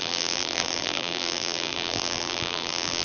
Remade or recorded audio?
remade